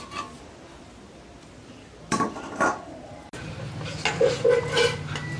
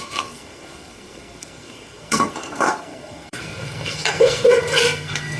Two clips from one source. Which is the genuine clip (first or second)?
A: first